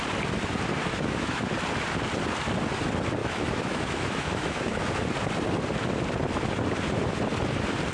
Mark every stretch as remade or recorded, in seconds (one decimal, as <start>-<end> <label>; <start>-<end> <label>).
0.0-0.9 recorded; 0.9-1.5 remade; 1.5-3.2 recorded; 3.2-4.9 remade; 4.9-7.9 recorded